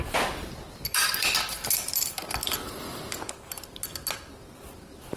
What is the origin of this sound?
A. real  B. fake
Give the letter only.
A